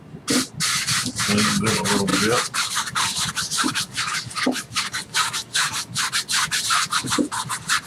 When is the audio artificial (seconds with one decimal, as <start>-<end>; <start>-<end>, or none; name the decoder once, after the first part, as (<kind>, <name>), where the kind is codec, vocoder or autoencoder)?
2.1-6.0 (codec, DAC)